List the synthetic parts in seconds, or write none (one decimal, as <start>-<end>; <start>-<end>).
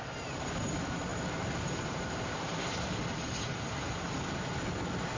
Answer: 1.1-3.0